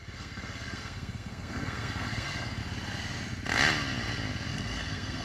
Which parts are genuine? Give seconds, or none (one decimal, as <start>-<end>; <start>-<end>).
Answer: 2.6-4.5